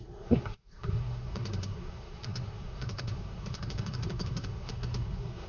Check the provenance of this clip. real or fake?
fake